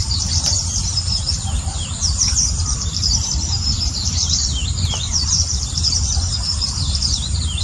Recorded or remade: remade